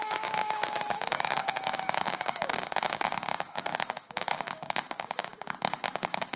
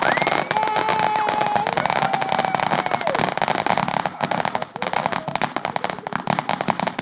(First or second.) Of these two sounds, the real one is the second